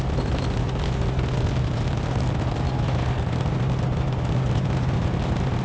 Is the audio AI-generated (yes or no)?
no